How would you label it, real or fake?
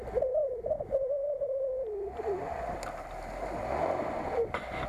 real